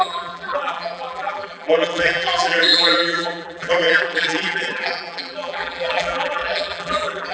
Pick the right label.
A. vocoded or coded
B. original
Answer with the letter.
A